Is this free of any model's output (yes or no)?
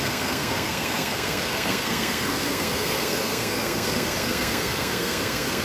no